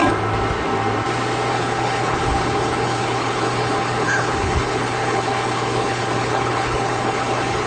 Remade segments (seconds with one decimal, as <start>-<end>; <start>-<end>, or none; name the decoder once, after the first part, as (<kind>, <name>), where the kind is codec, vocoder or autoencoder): 1.5-7.7 (codec, HILCodec)